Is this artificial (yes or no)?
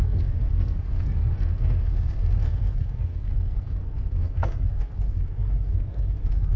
yes